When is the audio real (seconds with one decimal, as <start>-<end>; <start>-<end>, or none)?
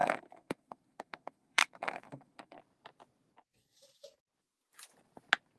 2.6-5.6